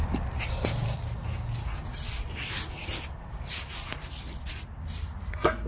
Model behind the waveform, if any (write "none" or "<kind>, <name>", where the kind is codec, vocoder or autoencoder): none